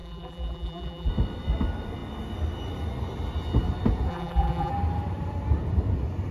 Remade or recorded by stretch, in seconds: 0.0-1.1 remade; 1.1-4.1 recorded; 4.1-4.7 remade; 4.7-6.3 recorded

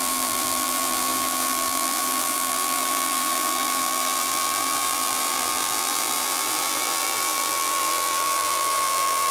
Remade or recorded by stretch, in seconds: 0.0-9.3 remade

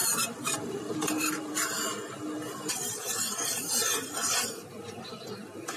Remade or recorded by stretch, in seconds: 0.0-1.5 remade; 1.5-5.8 recorded